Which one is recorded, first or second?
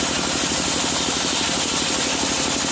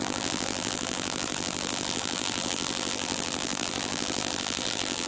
first